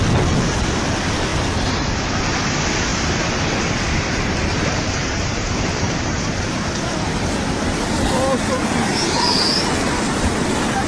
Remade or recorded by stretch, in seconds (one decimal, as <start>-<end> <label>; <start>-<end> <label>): 0.0-1.3 recorded; 1.3-2.2 remade; 2.2-2.9 recorded; 2.9-8.0 remade; 8.0-8.9 recorded; 8.9-9.6 remade; 9.6-10.9 recorded

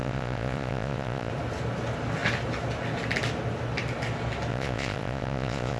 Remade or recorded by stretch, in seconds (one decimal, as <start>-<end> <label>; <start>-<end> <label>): 0.0-1.3 remade; 1.3-4.5 recorded; 4.5-5.8 remade

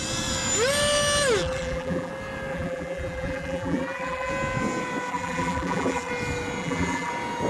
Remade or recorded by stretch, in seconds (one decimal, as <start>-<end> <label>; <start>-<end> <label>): 0.0-1.4 recorded; 1.4-2.1 remade; 2.1-2.5 recorded; 2.5-4.3 remade; 4.3-5.1 recorded; 5.1-6.1 remade; 6.1-6.6 recorded; 6.6-7.1 remade; 7.1-7.5 recorded

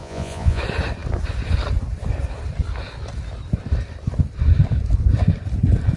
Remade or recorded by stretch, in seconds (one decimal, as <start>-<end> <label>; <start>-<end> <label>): 0.0-0.6 remade; 0.6-6.0 recorded

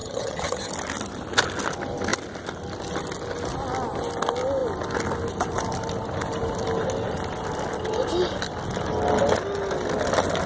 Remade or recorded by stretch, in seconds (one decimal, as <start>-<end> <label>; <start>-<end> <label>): 0.0-0.7 remade; 0.7-10.5 recorded

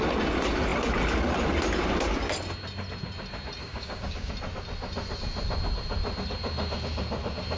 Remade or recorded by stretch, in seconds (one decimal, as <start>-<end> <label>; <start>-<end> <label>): 0.0-3.6 recorded; 3.6-4.3 remade; 4.3-7.6 recorded

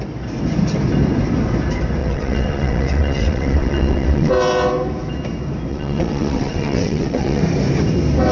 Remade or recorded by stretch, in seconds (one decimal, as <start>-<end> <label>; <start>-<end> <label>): 0.0-2.0 recorded; 2.0-4.3 remade; 4.3-5.7 recorded; 5.7-7.4 remade; 7.4-8.3 recorded